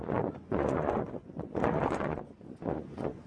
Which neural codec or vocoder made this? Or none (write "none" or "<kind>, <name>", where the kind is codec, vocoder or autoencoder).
vocoder, Vocos